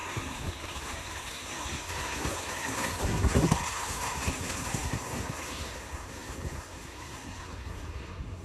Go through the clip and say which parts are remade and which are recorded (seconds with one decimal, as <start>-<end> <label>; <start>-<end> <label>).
0.0-8.4 remade